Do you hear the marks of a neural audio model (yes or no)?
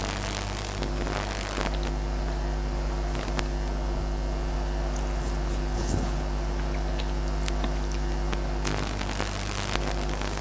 no